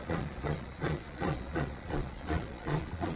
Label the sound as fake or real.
fake